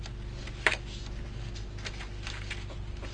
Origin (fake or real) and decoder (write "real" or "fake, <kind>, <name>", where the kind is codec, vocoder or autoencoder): real